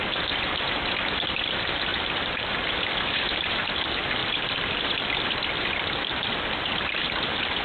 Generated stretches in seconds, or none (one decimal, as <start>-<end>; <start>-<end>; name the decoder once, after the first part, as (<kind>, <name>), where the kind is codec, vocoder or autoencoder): 1.9-2.5 (vocoder, BigVGAN v2); 4.2-7.6